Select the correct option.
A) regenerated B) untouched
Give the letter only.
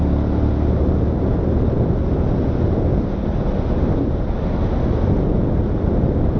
B